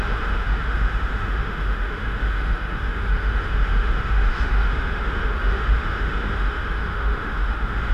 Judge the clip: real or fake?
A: fake